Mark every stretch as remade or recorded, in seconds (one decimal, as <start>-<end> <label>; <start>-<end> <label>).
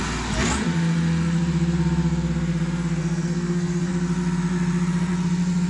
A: 0.0-3.0 recorded; 3.0-3.9 remade; 3.9-5.7 recorded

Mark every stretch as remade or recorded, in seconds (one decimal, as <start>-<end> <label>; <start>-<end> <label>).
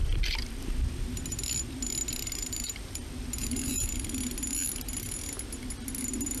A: 0.0-2.4 recorded; 2.4-3.0 remade; 3.0-3.4 recorded; 3.4-4.2 remade; 4.2-6.4 recorded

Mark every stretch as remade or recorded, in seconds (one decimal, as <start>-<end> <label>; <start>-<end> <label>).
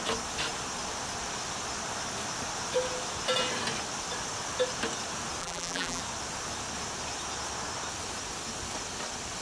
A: 0.0-5.4 recorded; 5.4-6.0 remade; 6.0-9.4 recorded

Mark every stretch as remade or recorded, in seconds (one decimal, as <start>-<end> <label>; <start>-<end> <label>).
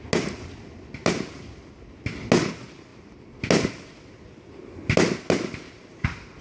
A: 0.0-6.4 recorded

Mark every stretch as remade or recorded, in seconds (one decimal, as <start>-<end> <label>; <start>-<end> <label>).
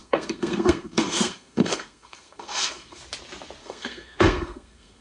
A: 0.0-3.0 remade; 3.0-3.6 recorded; 3.6-5.0 remade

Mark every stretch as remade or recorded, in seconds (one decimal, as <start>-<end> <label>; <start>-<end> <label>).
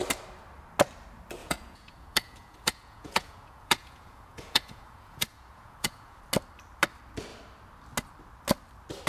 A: 0.0-1.4 recorded; 1.4-6.2 remade; 6.2-9.1 recorded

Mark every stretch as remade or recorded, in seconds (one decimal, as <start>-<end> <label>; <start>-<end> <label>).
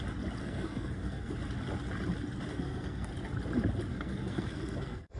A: 0.0-0.4 recorded; 0.4-1.3 remade; 1.3-2.5 recorded; 2.5-3.1 remade; 3.1-3.9 recorded; 3.9-5.2 remade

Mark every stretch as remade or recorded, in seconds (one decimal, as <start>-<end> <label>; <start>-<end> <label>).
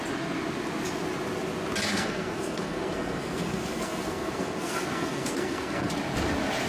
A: 0.0-1.9 recorded; 1.9-5.9 remade; 5.9-6.7 recorded